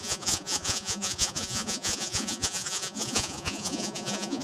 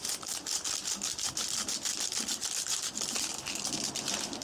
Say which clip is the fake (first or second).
first